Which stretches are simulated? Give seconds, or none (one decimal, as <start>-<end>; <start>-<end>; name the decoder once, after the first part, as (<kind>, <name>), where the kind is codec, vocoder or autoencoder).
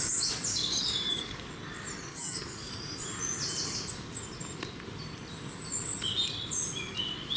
0.5-1.5 (codec, DAC); 2.1-2.7